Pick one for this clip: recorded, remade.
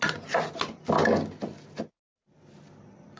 recorded